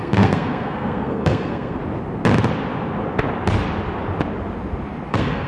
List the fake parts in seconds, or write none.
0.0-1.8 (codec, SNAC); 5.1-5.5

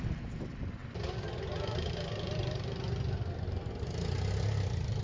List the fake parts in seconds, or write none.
none